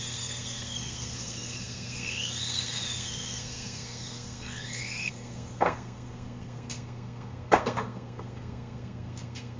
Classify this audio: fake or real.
fake